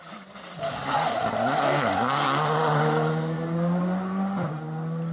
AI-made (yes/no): no